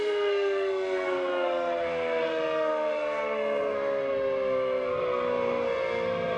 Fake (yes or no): yes